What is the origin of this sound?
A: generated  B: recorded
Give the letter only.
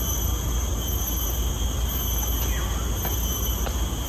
B